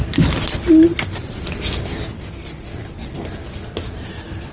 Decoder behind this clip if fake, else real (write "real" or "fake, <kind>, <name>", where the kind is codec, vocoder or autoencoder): real